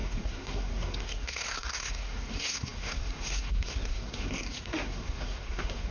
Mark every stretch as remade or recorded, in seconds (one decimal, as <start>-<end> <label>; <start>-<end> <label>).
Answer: 0.0-5.9 remade